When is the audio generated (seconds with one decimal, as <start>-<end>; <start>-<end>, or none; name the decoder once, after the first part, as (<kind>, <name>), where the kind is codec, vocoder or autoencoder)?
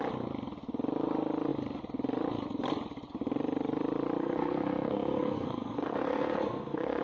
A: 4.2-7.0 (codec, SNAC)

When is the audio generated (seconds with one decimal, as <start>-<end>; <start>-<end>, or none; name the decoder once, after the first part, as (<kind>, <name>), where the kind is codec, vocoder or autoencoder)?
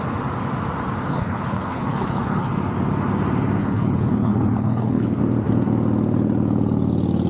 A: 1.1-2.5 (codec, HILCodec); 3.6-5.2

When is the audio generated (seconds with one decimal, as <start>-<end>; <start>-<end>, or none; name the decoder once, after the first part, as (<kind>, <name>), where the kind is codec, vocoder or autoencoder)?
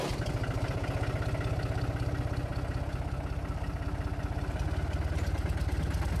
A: none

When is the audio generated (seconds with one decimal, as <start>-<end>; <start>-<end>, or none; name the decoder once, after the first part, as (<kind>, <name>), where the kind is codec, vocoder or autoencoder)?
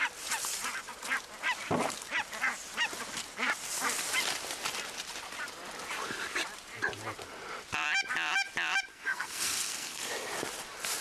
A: 8.9-10.1 (codec, SNAC)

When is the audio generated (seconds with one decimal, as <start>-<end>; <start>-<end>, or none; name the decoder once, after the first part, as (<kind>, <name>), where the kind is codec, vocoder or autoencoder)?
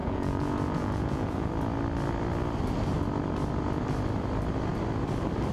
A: 0.0-1.5 (vocoder, Vocos)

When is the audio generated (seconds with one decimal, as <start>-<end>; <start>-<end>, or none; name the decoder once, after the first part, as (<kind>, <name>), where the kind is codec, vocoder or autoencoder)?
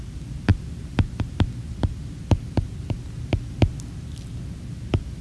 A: none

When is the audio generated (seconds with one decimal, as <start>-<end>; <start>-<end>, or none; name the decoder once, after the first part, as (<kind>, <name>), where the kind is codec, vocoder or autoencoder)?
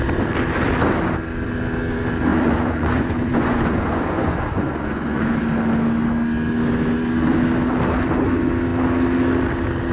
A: 2.3-5.3 (vocoder, Vocos)